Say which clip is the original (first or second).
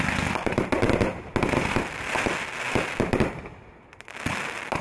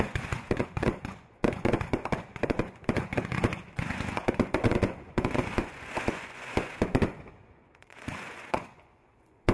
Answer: first